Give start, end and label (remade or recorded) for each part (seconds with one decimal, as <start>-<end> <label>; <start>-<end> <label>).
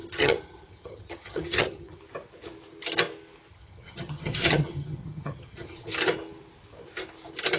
0.0-2.0 remade; 2.0-3.5 recorded; 3.5-5.9 remade; 5.9-7.6 recorded